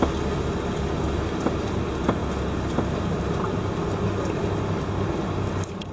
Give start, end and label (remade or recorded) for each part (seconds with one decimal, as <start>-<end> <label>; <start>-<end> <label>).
0.0-5.9 recorded